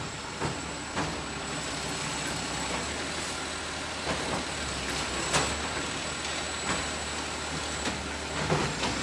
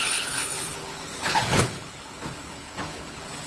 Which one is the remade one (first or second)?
second